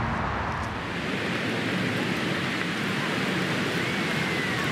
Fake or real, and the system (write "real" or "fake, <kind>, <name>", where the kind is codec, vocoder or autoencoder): real